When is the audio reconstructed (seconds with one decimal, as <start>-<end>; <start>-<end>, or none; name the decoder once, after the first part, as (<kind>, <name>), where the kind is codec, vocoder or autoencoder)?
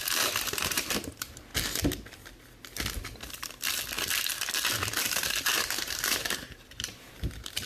0.0-1.5 (vocoder, BigVGAN v2); 5.0-7.7